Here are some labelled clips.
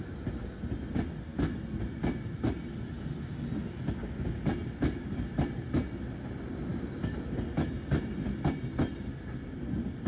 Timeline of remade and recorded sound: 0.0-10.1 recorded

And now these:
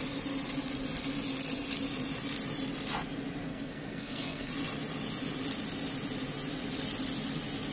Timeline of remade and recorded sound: 0.0-3.5 recorded; 3.5-4.5 remade; 4.5-7.7 recorded